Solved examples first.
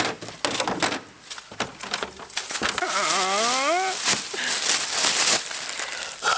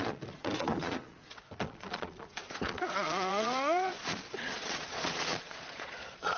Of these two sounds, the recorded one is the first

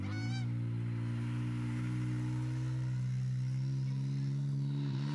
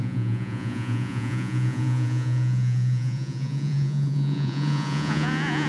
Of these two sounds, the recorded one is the first